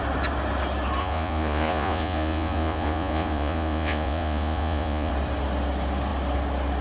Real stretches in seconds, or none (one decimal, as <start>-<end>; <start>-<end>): 0.0-1.0; 5.1-6.8